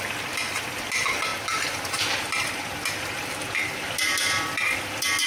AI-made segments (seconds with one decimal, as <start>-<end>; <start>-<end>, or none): none